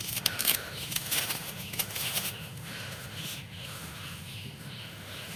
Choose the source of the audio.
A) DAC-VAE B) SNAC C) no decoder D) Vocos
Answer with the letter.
A